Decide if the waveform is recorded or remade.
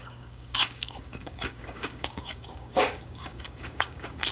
remade